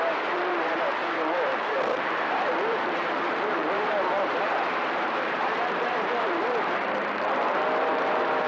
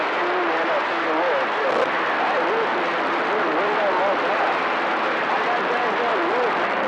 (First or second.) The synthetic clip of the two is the first